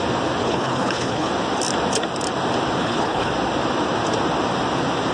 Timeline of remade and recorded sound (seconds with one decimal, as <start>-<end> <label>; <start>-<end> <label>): 0.0-0.4 recorded; 0.4-1.3 remade; 1.3-2.8 recorded; 2.8-3.3 remade; 3.3-5.1 recorded